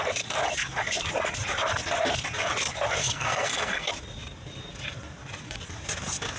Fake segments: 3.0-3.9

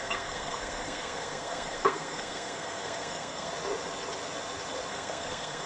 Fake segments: 0.0-3.5; 4.9-5.7

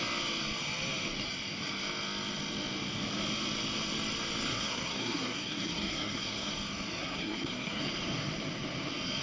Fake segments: 4.5-6.5; 7.0-7.8

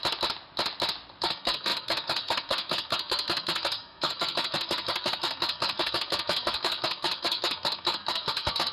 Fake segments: 1.2-8.7